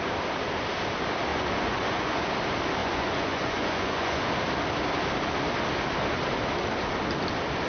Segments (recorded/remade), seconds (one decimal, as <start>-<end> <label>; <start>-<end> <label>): 0.0-1.3 recorded; 1.3-2.3 remade; 2.3-2.8 recorded; 2.8-4.3 remade; 4.3-7.7 recorded